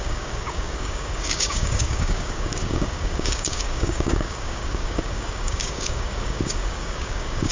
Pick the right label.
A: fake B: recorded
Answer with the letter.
A